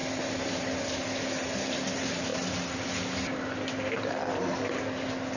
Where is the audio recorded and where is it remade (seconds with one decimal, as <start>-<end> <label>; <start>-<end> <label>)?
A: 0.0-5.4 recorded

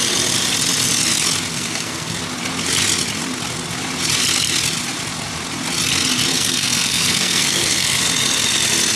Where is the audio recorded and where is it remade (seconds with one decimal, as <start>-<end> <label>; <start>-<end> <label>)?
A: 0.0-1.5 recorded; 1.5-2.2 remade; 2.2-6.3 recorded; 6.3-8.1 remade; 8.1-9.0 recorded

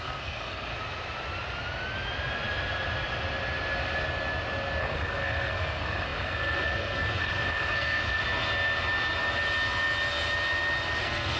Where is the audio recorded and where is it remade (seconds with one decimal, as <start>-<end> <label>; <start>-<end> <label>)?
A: 0.0-0.7 remade; 0.7-4.8 recorded; 4.8-8.2 remade; 8.2-11.0 recorded; 11.0-11.4 remade

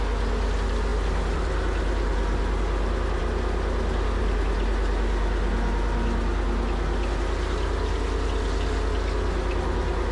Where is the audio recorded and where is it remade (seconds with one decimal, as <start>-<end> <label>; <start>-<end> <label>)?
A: 0.0-0.9 recorded; 0.9-1.5 remade; 1.5-10.1 recorded

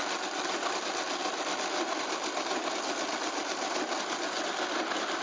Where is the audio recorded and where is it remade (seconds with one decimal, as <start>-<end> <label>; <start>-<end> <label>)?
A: 0.0-5.2 recorded

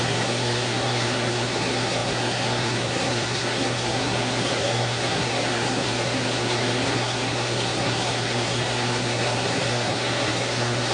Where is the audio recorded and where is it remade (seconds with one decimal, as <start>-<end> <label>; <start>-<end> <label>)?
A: 0.0-10.9 remade

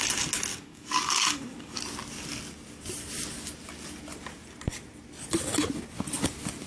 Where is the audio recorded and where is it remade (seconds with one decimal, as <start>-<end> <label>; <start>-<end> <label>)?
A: 0.0-0.5 recorded; 0.5-1.8 remade; 1.8-6.7 recorded